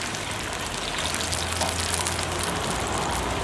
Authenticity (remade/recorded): recorded